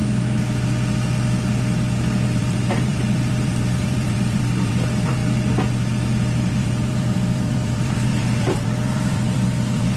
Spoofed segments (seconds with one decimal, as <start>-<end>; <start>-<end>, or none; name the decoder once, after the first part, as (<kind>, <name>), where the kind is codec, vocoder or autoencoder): 2.0-5.2 (vocoder, BigVGAN v2); 6.5-10.0